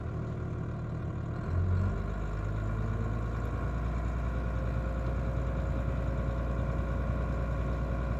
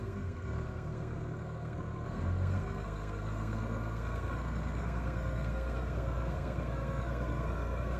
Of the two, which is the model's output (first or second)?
second